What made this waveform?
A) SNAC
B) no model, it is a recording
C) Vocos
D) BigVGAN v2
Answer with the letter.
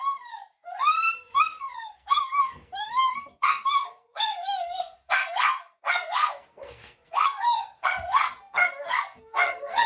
A